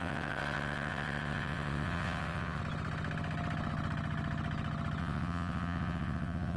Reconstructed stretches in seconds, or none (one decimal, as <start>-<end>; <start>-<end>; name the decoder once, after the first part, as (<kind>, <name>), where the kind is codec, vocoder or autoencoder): 0.0-2.6 (vocoder, WaveNeXt); 5.0-6.6

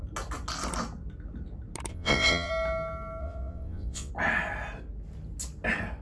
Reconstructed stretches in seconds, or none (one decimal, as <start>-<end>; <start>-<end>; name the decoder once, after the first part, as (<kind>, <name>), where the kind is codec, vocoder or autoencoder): 1.9-2.5 (vocoder, WaveNeXt); 3.2-4.1

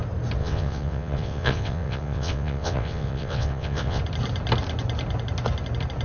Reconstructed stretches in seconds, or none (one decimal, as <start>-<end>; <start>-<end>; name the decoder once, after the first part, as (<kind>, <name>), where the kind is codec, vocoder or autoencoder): 0.4-4.0 (vocoder, WaveNeXt)

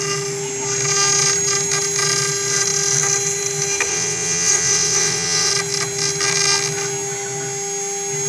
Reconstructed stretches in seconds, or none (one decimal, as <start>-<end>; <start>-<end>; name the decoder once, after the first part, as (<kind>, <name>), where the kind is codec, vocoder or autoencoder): 3.9-5.5 (vocoder, WaveNeXt)

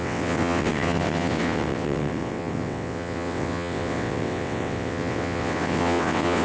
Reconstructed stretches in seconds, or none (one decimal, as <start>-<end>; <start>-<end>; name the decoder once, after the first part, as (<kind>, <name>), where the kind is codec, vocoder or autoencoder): 0.0-6.4 (vocoder, WaveNeXt)